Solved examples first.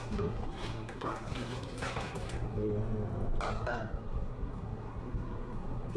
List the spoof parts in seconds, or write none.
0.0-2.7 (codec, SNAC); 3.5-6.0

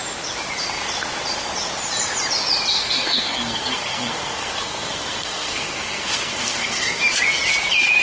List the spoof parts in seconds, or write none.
2.7-7.0 (codec, SNAC)